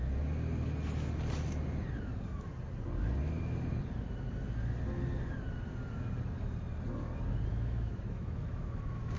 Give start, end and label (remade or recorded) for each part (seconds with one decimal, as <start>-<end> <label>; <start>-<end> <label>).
0.0-7.5 recorded; 7.5-9.2 remade